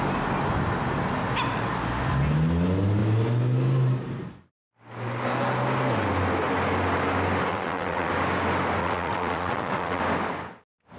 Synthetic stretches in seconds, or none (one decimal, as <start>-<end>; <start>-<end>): 7.5-8.1; 8.8-10.0